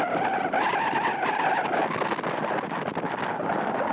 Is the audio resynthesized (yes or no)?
no